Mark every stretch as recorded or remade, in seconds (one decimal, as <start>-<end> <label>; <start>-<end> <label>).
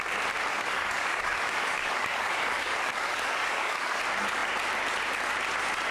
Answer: 0.0-0.5 recorded; 0.5-4.0 remade; 4.0-5.9 recorded